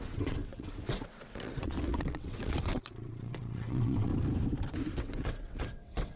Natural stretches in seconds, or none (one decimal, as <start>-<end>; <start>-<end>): 4.1-5.0